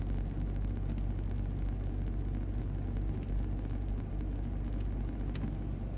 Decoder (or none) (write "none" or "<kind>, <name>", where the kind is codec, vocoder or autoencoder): none